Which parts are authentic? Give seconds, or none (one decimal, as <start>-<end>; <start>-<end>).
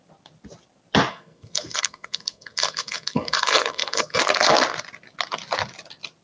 0.0-1.1; 4.2-6.2